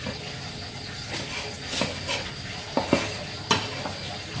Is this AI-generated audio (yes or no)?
no